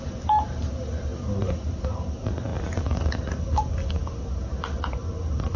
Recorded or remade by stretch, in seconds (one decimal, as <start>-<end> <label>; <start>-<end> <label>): 0.0-5.6 recorded